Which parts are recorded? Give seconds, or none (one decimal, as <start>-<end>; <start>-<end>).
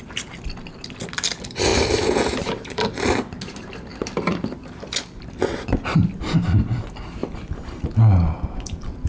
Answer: 0.0-9.1